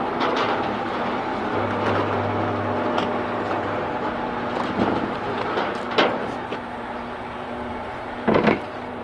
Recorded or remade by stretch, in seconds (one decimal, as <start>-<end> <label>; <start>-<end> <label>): 0.0-1.3 remade; 1.3-3.5 recorded; 3.5-9.0 remade